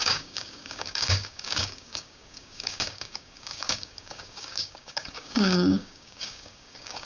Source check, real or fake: fake